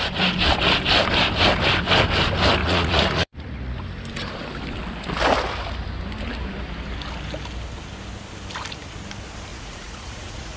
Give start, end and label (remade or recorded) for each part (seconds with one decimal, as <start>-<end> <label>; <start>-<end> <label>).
0.0-2.6 recorded; 2.6-3.8 remade; 3.8-9.5 recorded; 9.5-10.6 remade